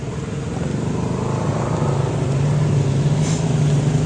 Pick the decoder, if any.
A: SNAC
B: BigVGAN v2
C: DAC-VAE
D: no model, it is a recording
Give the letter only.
D